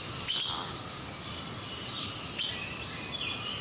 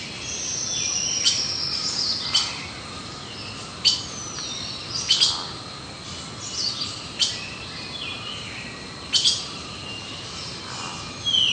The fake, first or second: first